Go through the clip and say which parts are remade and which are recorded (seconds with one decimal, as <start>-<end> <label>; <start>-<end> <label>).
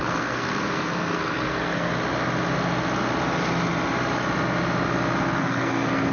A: 0.0-1.9 remade; 1.9-5.4 recorded; 5.4-6.1 remade